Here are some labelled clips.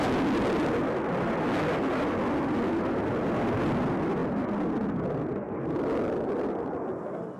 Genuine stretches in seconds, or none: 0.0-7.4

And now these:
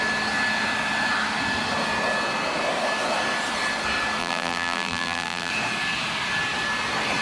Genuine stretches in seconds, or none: 0.0-4.2; 5.5-7.2

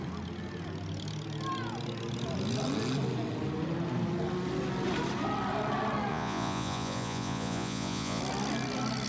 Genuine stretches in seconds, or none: 0.0-6.1; 8.2-9.1

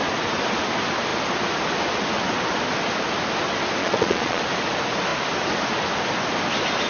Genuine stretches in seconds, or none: 0.0-3.8; 4.4-6.9

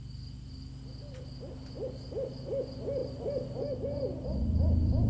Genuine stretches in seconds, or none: 0.0-5.1

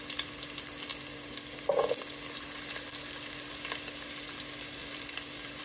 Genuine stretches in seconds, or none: 0.0-4.8